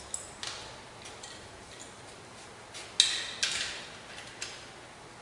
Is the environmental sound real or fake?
real